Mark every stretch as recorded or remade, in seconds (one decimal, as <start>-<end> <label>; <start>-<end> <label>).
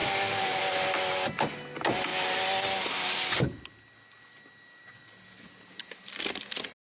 0.0-0.6 remade; 0.6-6.9 recorded